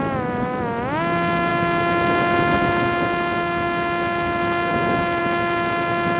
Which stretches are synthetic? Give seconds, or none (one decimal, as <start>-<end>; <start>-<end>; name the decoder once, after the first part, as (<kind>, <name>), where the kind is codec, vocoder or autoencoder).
none